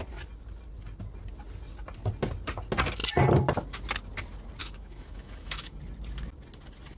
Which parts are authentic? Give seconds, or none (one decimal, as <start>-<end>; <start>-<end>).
0.0-4.6; 5.8-7.0